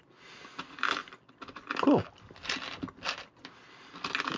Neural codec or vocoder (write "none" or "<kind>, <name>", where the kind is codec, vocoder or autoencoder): none